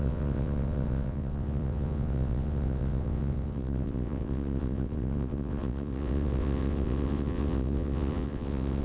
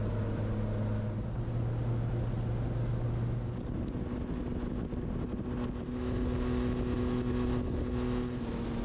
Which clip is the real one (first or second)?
second